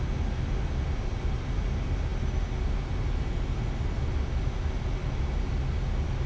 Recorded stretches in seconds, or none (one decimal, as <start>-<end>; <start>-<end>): 0.0-6.3